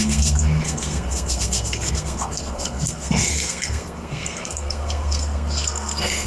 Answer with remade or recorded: remade